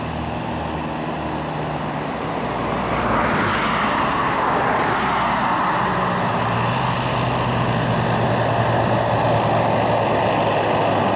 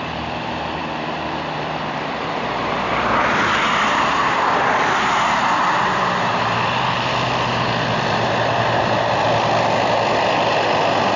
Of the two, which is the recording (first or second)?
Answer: first